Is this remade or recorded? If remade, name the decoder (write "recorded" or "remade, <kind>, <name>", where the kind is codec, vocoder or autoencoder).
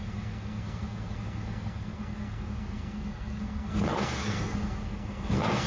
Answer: remade, codec, SNAC